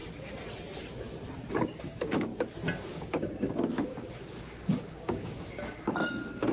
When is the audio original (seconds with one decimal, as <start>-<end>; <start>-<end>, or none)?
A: 0.0-1.5; 2.3-2.8